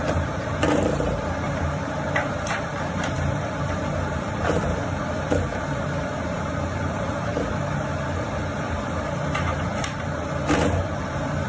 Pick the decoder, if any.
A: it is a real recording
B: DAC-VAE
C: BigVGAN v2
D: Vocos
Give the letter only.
C